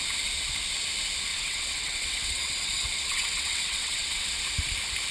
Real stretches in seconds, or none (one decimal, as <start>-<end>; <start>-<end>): 0.0-1.3; 4.4-5.1